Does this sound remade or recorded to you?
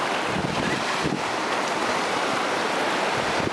remade